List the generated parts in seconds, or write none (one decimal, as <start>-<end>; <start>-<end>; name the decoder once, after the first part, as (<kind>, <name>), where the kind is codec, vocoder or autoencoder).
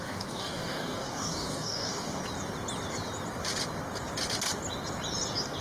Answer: 0.0-2.2 (codec, DAC)